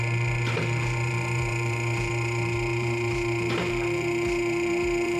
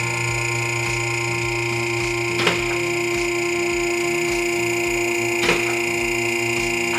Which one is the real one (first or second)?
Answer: second